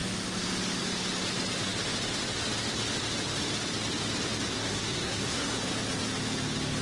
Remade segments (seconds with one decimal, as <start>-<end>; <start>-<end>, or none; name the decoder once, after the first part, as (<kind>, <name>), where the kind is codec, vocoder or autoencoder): 4.5-5.6 (codec, SNAC)